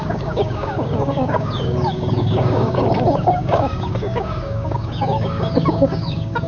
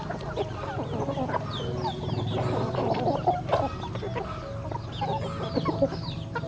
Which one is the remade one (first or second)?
first